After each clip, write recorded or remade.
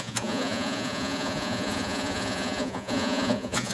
remade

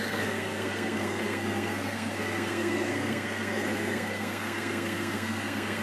remade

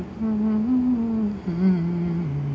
recorded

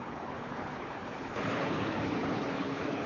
remade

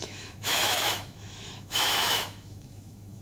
remade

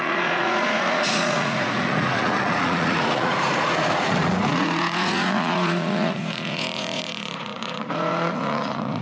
remade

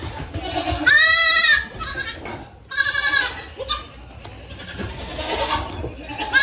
recorded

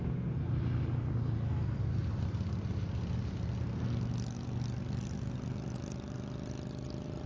recorded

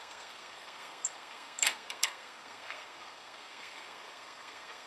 remade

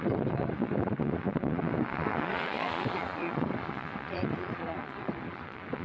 remade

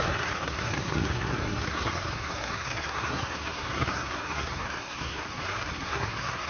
remade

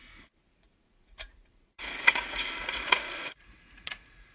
remade